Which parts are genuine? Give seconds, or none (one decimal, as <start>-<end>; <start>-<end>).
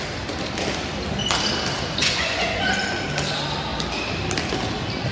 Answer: 0.0-2.0; 2.7-5.1